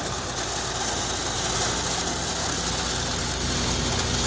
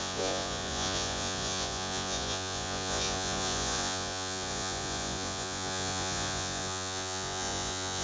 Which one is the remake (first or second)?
second